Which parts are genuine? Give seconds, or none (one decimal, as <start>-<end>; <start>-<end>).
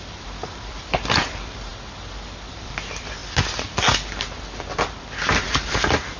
1.7-2.5; 3.2-4.1